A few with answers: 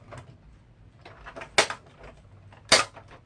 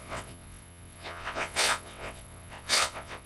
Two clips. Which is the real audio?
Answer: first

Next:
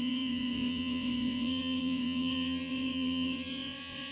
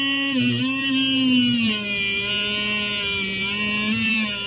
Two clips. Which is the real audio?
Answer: second